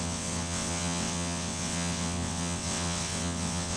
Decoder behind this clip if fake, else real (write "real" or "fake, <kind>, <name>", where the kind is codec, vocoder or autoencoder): fake, vocoder, WaveNeXt